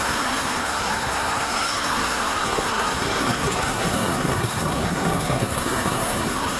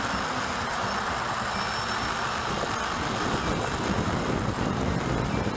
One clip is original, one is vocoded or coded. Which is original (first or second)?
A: second